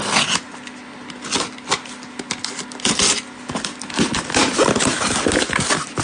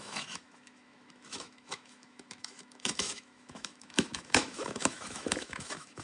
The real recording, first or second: first